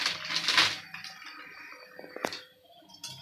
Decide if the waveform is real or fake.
real